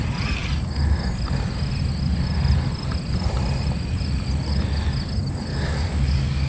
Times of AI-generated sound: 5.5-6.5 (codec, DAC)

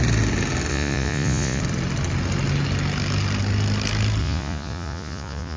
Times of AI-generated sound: 0.7-1.6 (vocoder, Vocos); 4.2-5.6

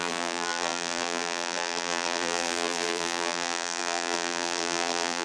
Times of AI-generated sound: 0.0-5.2 (vocoder, BigVGAN v2)

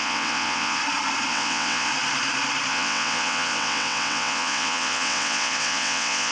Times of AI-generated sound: 0.0-0.8 (vocoder, WaveNeXt); 1.3-1.9; 2.7-6.3

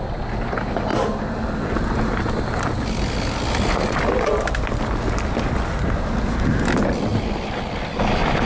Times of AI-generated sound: none

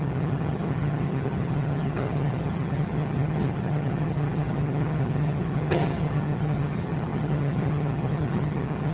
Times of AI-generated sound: 0.0-8.9 (vocoder, HiFi-GAN)

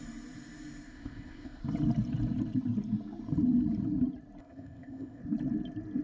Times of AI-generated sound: 0.9-1.6 (codec, ZipCodec); 4.4-5.2

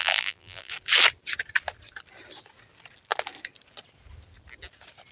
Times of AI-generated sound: 0.0-0.7 (vocoder, BigVGAN v2)